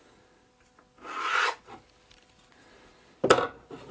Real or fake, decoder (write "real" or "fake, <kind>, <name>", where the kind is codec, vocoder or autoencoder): real